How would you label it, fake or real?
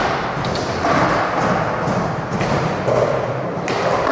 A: real